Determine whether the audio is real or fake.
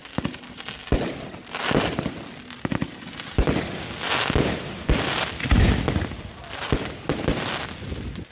real